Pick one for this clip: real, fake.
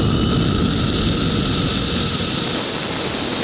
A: real